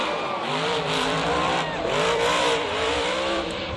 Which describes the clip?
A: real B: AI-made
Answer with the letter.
B